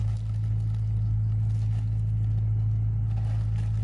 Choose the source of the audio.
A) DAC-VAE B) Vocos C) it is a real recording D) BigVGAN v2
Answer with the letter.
C